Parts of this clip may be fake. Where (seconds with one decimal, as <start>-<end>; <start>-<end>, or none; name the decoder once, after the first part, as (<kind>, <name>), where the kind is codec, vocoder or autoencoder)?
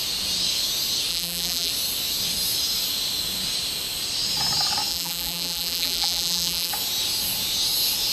1.1-1.7 (vocoder, BigVGAN v2); 4.9-6.7